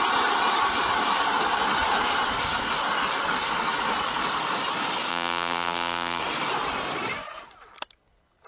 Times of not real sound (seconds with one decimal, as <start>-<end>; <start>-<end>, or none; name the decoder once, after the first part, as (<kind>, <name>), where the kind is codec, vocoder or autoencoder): 5.1-6.2 (vocoder, BigVGAN v2)